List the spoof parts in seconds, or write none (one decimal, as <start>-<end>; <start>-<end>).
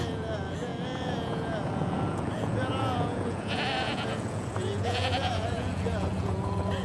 0.0-6.8